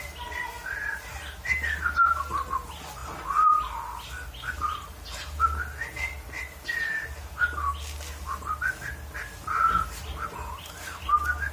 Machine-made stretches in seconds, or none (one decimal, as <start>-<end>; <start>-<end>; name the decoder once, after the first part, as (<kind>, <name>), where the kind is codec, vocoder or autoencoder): none